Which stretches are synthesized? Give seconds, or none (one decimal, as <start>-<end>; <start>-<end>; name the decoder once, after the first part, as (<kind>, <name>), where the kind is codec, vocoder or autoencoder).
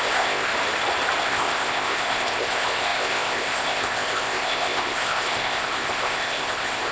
0.0-0.5 (codec, ZipCodec); 1.2-6.9